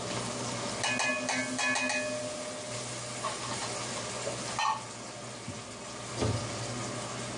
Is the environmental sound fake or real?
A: real